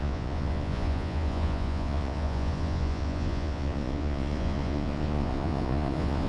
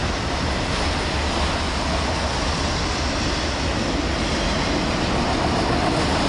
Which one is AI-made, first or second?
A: first